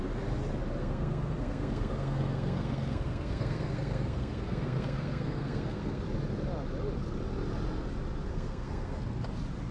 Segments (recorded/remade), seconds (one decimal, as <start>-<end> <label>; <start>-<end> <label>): 0.0-0.8 recorded; 0.8-6.0 remade; 6.0-8.3 recorded; 8.3-9.0 remade; 9.0-9.7 recorded